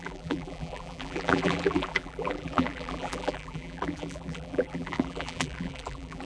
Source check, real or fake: fake